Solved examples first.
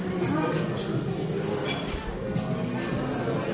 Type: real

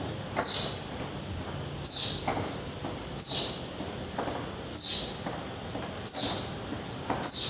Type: real